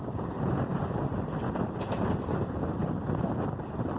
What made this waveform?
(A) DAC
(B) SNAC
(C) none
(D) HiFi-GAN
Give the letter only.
C